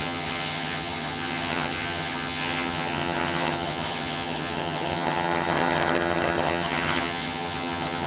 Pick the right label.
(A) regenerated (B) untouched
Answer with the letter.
A